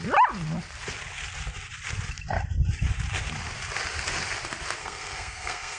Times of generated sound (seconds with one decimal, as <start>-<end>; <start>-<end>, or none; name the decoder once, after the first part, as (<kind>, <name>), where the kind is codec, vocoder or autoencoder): 4.8-5.8 (codec, SNAC)